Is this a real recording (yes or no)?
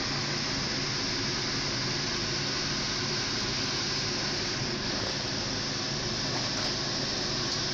yes